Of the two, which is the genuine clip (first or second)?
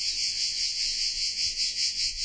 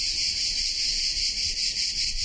second